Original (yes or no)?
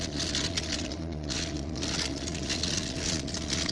no